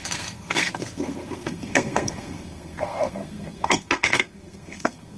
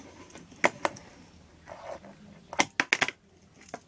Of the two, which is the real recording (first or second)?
second